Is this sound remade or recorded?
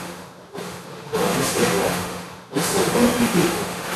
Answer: remade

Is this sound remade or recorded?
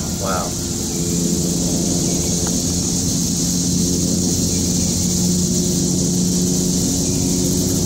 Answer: recorded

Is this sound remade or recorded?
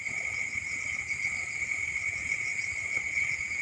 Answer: recorded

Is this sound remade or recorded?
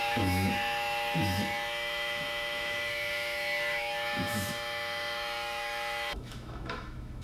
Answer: remade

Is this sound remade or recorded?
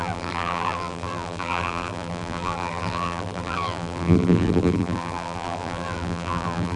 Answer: remade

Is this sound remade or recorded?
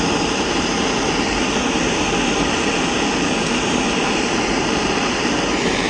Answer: remade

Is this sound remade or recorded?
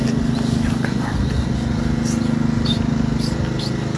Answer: recorded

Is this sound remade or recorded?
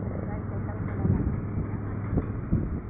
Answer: recorded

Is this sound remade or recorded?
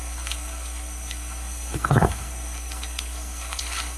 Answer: remade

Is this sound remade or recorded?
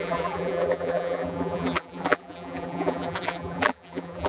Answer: remade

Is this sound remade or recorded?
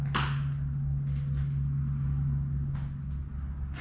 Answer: recorded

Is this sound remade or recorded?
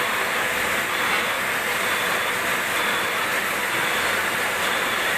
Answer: recorded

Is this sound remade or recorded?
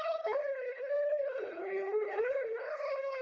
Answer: remade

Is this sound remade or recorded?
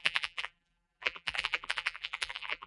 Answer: remade